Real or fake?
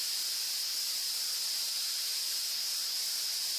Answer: fake